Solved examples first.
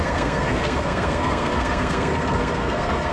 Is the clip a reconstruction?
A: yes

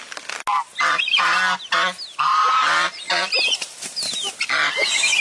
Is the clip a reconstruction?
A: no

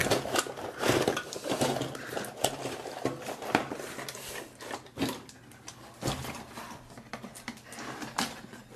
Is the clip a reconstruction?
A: no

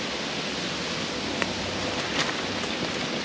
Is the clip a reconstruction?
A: no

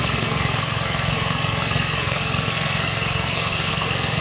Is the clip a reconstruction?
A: yes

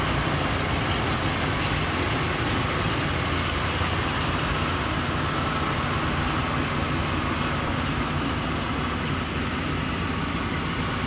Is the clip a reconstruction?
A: no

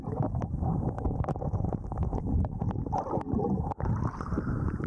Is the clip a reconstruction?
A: no